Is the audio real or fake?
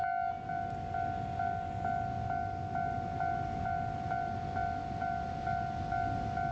real